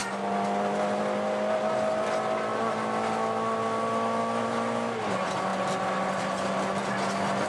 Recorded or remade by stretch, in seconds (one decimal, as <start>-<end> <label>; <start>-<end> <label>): 0.0-7.5 recorded